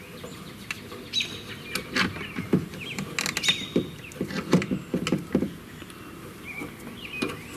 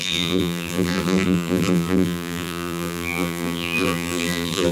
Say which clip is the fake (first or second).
second